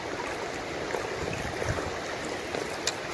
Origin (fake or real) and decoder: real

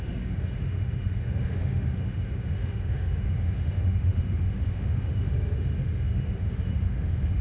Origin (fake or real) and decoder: fake, autoencoder, DAC-VAE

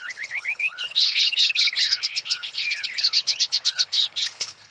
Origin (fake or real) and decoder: fake, codec, HILCodec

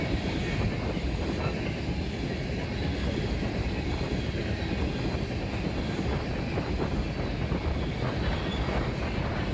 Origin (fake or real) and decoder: real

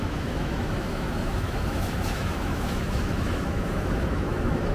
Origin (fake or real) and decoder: fake, autoencoder, DAC-VAE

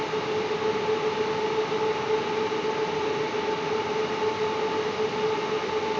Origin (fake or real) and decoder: real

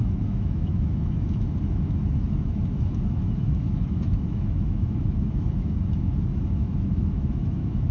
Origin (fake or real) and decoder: fake, autoencoder, DAC-VAE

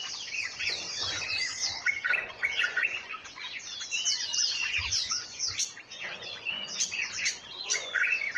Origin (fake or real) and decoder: fake, vocoder, Vocos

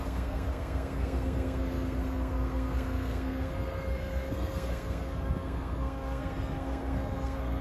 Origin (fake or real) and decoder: fake, codec, SNAC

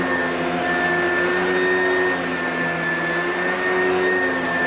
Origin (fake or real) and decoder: real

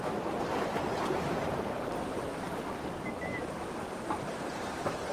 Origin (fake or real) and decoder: real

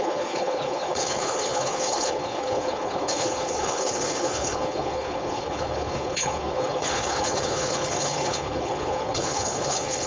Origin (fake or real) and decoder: fake, codec, HILCodec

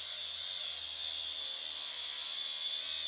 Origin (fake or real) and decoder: real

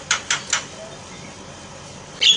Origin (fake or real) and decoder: fake, vocoder, BigVGAN v2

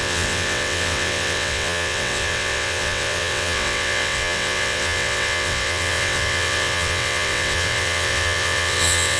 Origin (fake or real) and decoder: fake, vocoder, WaveNeXt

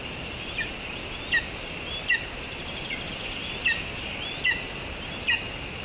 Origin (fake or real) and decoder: real